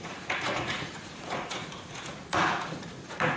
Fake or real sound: fake